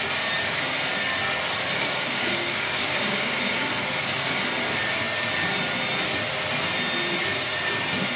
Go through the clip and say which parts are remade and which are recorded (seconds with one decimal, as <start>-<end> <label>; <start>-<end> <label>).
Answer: 0.0-1.8 recorded; 1.8-3.7 remade; 3.7-8.2 recorded